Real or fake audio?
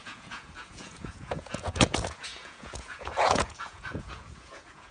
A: fake